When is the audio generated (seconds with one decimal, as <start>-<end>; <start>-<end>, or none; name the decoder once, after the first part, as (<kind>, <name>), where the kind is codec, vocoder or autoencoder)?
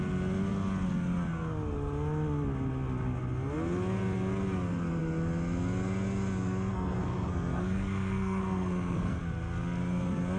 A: 6.7-9.2 (codec, SNAC)